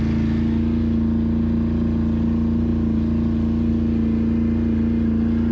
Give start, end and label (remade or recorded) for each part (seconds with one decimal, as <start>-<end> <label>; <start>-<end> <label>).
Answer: 0.0-5.5 recorded